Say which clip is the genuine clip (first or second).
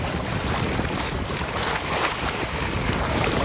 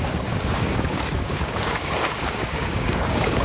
first